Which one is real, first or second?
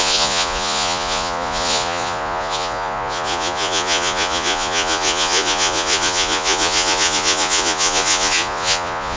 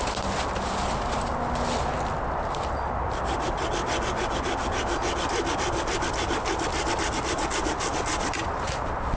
second